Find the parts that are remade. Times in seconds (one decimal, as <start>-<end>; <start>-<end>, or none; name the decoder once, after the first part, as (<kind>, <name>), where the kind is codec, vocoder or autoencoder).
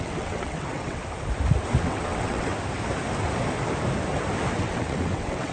0.0-1.0 (vocoder, WaveNeXt); 1.8-2.5; 4.6-5.5